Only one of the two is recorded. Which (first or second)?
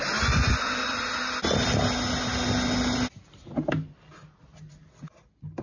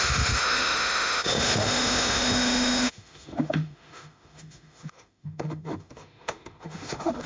first